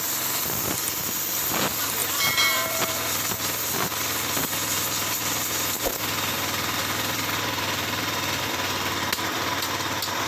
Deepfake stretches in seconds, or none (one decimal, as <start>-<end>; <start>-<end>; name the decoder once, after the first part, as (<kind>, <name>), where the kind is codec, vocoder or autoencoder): 2.0-2.9 (vocoder, BigVGAN v2); 6.8-8.4

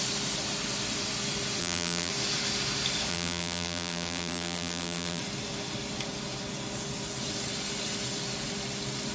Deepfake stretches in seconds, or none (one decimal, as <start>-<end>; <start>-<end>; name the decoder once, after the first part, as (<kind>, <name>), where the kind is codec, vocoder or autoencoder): 1.6-2.1 (vocoder, BigVGAN v2); 3.1-5.2

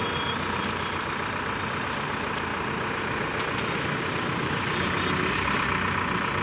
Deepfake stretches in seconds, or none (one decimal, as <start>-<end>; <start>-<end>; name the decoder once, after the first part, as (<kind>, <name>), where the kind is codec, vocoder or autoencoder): none

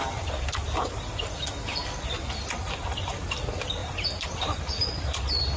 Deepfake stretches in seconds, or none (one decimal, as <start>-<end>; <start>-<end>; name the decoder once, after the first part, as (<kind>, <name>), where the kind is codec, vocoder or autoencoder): 0.6-1.1 (vocoder, BigVGAN v2); 3.8-4.6